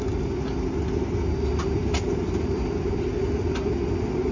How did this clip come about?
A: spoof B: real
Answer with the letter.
B